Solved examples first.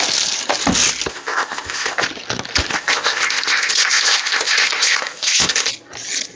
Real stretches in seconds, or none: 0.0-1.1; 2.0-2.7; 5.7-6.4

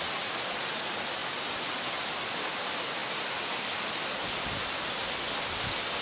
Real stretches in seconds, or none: 0.0-3.0; 3.6-6.0

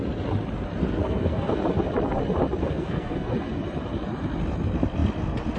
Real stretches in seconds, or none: 0.0-1.0; 1.6-2.6; 3.3-5.6